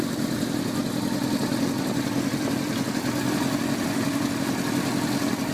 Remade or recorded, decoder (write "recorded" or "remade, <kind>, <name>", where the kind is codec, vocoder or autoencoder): recorded